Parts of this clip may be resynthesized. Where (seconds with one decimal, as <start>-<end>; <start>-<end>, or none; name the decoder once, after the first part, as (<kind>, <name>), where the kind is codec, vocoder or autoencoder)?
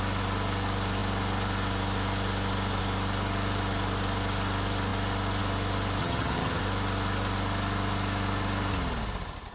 6.0-6.6 (vocoder, HiFi-GAN)